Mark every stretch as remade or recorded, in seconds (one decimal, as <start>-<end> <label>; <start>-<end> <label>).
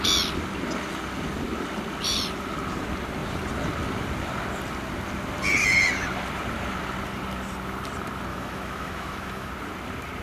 0.0-8.3 recorded; 8.3-9.5 remade; 9.5-10.2 recorded